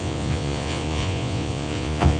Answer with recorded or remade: remade